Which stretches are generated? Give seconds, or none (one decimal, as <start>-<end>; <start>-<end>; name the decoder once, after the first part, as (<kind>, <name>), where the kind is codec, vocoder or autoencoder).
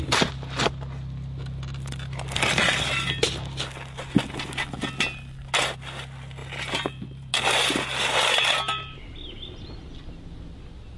6.4-7.3 (vocoder, BigVGAN v2)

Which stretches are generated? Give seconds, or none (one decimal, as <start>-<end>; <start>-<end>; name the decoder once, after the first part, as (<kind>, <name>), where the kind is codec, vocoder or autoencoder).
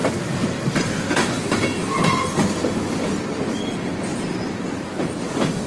4.1-5.7 (vocoder, BigVGAN v2)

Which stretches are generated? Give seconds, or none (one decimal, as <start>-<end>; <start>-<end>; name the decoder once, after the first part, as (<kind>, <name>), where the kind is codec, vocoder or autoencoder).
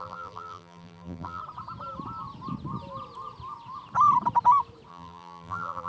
0.0-1.4 (vocoder, BigVGAN v2); 4.9-5.9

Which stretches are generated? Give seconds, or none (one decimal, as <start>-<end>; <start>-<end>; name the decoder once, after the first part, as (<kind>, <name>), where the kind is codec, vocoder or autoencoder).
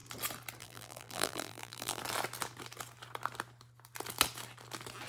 0.6-2.0 (vocoder, BigVGAN v2)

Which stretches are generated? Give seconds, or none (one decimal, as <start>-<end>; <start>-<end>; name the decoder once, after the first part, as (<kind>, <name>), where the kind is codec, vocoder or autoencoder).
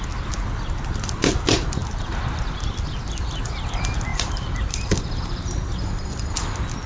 1.8-2.4 (vocoder, BigVGAN v2); 4.1-5.2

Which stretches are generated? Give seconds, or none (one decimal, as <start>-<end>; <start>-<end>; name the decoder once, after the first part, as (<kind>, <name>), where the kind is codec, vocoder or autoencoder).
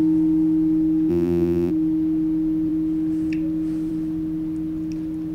1.1-1.7 (vocoder, BigVGAN v2)